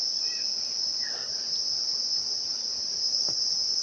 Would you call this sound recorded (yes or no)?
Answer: yes